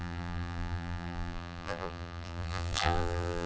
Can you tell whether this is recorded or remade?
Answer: remade